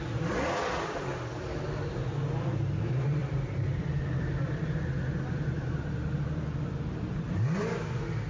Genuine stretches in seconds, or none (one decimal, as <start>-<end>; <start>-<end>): 0.0-3.2; 6.6-8.3